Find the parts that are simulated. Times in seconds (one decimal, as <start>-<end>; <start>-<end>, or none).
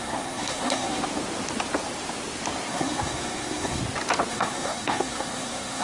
0.0-1.0; 2.7-3.8; 4.3-5.8